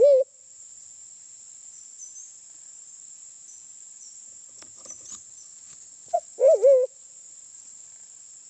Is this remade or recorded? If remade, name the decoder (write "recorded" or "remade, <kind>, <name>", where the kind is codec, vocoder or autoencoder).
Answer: recorded